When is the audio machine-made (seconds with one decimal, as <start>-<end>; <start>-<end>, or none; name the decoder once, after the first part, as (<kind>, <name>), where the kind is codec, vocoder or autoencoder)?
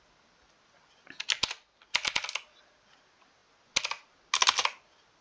none